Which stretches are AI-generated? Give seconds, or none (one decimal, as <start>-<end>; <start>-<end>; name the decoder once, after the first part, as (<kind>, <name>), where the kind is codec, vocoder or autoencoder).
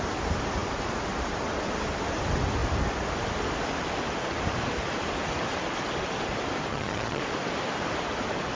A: 6.7-7.2 (vocoder, HiFi-GAN)